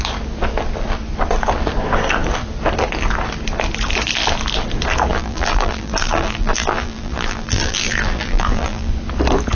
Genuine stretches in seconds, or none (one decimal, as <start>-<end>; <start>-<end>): 0.0-5.1; 8.9-9.6